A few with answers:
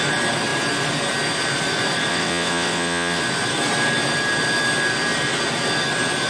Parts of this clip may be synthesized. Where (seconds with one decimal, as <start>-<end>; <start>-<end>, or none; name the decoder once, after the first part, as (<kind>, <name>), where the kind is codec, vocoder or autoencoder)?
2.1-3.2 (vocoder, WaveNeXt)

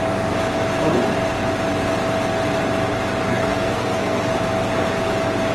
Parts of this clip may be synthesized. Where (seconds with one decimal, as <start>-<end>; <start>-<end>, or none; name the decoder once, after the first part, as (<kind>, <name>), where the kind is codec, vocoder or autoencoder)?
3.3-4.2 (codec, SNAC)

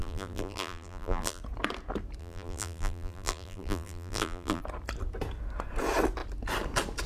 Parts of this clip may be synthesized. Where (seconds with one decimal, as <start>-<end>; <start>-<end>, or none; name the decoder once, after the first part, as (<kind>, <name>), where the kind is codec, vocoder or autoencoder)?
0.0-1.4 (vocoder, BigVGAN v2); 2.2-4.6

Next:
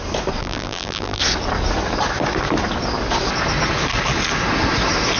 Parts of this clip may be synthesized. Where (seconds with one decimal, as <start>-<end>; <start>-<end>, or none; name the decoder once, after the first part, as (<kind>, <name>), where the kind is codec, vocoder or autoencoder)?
0.4-1.2 (vocoder, BigVGAN v2)